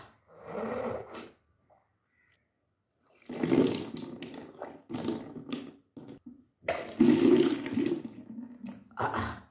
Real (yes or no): yes